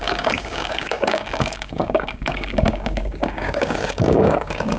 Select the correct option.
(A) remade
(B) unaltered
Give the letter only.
A